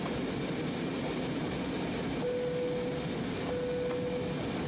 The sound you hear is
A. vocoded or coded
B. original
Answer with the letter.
B